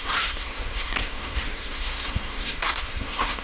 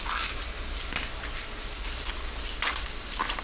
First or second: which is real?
second